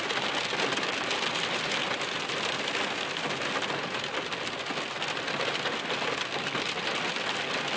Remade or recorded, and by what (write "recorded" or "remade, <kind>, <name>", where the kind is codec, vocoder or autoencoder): recorded